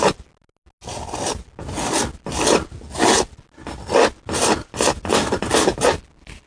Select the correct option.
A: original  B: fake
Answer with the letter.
A